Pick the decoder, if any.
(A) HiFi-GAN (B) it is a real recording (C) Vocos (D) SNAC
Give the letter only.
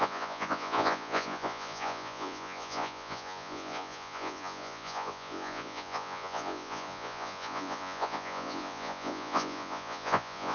C